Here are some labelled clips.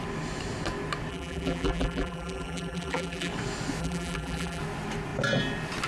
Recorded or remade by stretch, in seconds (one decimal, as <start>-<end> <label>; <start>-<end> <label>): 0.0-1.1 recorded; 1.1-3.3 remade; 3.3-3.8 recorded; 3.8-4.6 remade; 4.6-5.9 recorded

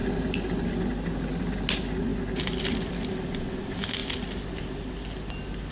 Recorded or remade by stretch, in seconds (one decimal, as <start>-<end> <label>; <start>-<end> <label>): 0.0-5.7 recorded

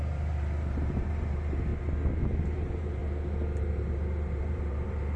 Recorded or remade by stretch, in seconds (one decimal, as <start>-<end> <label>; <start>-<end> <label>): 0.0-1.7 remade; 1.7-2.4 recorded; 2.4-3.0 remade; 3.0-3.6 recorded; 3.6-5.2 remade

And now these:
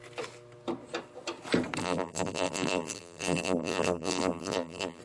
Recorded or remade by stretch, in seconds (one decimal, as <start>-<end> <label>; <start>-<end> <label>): 0.0-1.8 recorded; 1.8-5.0 remade

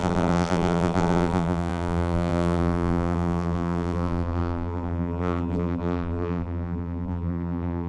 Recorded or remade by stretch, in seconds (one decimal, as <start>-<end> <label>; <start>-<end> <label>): 0.0-7.9 remade

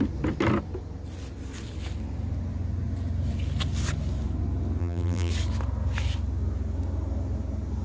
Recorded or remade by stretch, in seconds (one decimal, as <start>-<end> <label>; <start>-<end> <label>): 0.0-4.8 recorded; 4.8-5.3 remade; 5.3-7.8 recorded

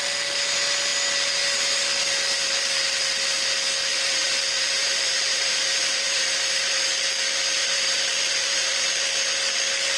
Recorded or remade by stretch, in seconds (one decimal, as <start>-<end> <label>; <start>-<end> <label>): 0.0-3.9 recorded; 3.9-6.9 remade; 6.9-7.6 recorded; 7.6-8.9 remade; 8.9-10.0 recorded